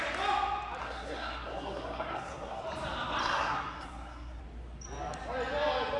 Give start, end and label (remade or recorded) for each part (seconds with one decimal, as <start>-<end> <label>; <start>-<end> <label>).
0.0-0.8 recorded; 0.8-2.6 remade; 2.6-3.2 recorded; 3.2-4.4 remade; 4.4-6.0 recorded

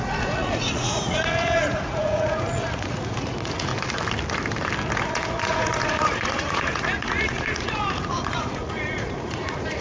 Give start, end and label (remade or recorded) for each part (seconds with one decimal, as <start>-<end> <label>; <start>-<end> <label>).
0.0-3.7 remade; 3.7-5.1 recorded; 5.1-9.8 remade

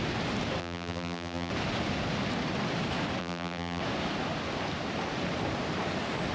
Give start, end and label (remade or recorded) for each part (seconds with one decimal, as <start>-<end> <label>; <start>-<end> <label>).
0.0-0.6 recorded; 0.6-1.5 remade; 1.5-3.2 recorded; 3.2-3.8 remade; 3.8-6.3 recorded

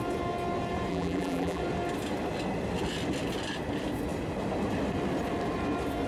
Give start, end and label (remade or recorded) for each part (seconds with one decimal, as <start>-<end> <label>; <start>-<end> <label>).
0.0-0.9 recorded; 0.9-1.6 remade; 1.6-6.1 recorded

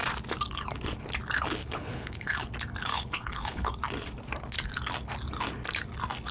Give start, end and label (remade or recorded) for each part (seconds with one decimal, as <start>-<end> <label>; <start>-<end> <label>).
0.0-1.6 recorded; 1.6-2.5 remade; 2.5-2.9 recorded; 2.9-3.7 remade; 3.7-6.3 recorded

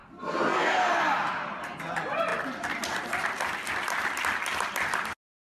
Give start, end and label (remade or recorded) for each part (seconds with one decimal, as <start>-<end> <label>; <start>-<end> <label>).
0.0-1.0 remade; 1.0-5.6 recorded

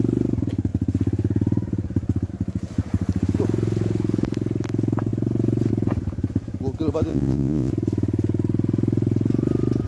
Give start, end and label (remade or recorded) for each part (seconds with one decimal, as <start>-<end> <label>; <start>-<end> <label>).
0.0-7.1 recorded; 7.1-7.7 remade; 7.7-9.9 recorded

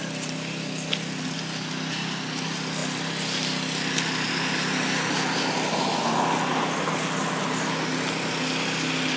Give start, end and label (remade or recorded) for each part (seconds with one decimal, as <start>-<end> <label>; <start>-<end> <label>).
0.0-9.2 recorded